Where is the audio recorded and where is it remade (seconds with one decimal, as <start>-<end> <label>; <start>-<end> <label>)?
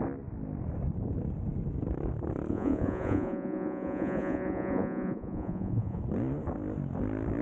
0.0-2.5 recorded; 2.5-6.0 remade; 6.0-7.4 recorded